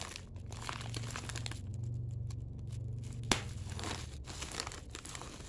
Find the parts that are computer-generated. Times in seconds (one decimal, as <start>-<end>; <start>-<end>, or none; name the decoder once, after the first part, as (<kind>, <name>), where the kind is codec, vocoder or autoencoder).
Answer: none